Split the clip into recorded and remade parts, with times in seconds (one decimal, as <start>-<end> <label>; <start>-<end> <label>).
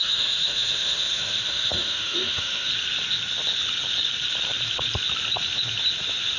0.0-2.7 remade; 2.7-6.4 recorded